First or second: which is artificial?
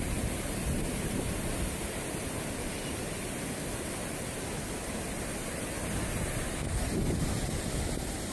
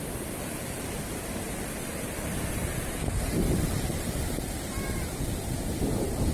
second